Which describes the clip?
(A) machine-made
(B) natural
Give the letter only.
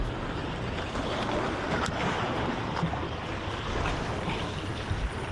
B